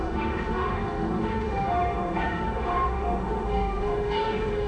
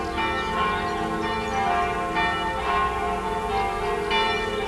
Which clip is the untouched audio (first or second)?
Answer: second